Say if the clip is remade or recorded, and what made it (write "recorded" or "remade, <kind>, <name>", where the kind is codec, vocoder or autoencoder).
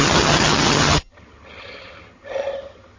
remade, vocoder, HiFi-GAN